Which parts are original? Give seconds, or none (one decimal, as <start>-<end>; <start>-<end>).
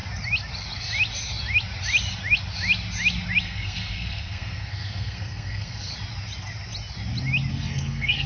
0.0-3.4; 5.9-7.5